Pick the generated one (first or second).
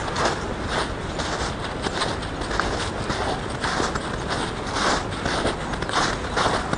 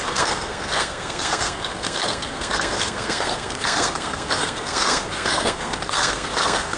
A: second